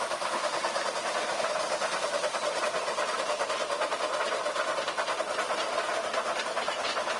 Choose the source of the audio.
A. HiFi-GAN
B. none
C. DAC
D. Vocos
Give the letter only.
B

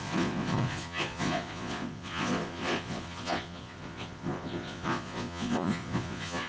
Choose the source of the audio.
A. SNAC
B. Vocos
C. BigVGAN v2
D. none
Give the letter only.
B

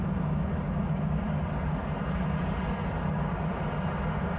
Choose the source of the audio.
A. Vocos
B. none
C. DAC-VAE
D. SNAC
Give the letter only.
B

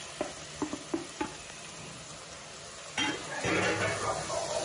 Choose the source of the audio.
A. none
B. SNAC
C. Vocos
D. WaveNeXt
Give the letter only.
A